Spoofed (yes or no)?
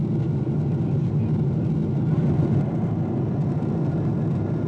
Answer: no